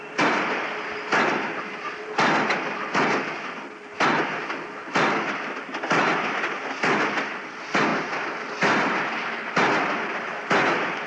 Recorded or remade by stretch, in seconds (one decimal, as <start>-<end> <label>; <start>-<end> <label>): 0.0-11.1 recorded